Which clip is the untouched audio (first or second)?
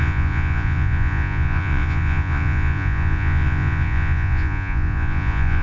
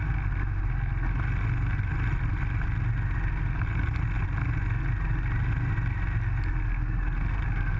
second